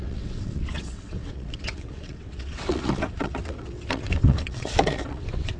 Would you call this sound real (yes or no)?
no